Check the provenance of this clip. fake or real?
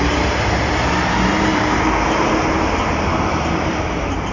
fake